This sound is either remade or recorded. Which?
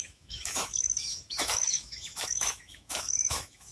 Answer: remade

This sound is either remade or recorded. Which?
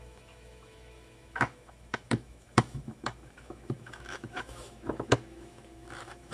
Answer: remade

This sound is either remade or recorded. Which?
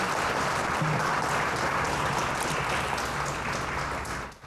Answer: recorded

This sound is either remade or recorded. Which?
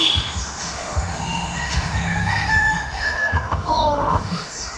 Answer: remade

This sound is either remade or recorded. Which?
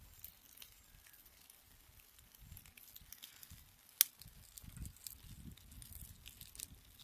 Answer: recorded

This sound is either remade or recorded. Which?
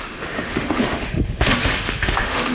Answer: remade